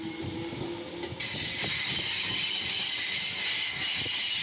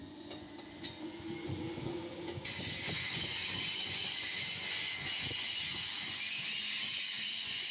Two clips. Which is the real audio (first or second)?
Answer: first